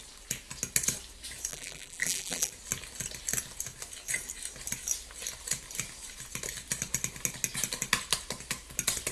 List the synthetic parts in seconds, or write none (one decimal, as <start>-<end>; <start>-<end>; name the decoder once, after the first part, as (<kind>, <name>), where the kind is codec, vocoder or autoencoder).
1.5-2.5 (vocoder, BigVGAN v2)